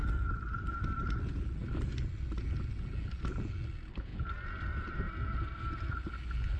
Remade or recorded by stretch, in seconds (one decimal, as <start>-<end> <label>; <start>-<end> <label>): 0.0-6.6 recorded